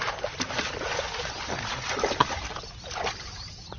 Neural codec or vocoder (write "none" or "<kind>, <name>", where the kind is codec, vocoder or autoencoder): none